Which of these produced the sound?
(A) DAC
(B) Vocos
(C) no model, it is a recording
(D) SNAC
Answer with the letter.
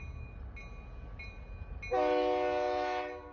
C